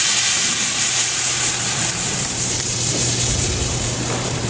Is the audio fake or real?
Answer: fake